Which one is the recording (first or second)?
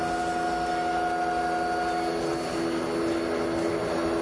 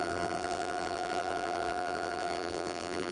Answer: first